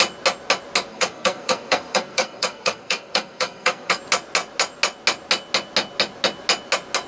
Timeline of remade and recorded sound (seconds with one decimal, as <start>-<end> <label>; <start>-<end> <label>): 0.0-0.9 recorded; 0.9-4.0 remade; 4.0-7.1 recorded